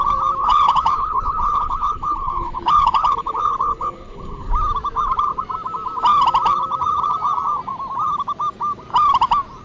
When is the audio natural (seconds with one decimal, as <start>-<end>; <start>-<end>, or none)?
0.0-0.4; 4.5-9.6